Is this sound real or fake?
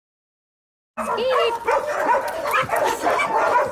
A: real